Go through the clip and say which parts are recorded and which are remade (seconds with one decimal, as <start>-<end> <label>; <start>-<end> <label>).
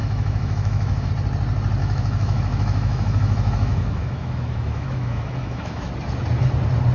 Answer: 0.0-1.1 remade; 1.1-1.8 recorded; 1.8-5.9 remade; 5.9-6.9 recorded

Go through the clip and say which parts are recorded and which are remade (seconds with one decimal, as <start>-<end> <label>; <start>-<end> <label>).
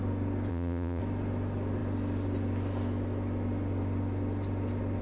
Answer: 0.0-0.5 recorded; 0.5-1.0 remade; 1.0-5.0 recorded